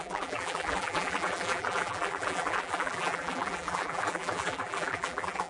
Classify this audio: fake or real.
fake